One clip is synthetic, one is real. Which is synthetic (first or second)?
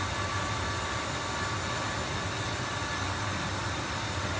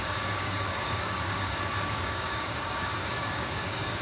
second